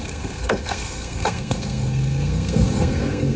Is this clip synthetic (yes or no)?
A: yes